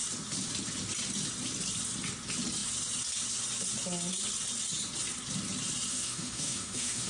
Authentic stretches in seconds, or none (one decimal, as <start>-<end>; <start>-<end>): 0.0-5.9